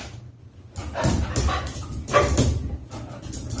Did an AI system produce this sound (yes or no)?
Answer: no